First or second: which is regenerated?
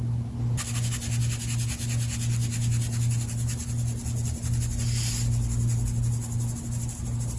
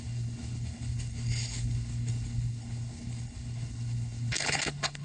second